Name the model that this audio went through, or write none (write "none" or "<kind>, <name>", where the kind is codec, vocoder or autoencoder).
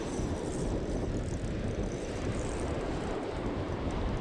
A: vocoder, BigVGAN v2